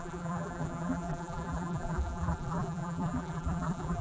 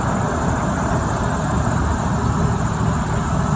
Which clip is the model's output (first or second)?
first